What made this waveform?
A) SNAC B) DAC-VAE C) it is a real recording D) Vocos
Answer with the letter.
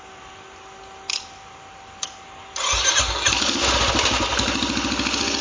C